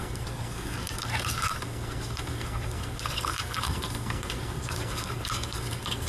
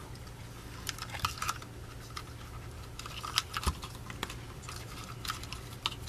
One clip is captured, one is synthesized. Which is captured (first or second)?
second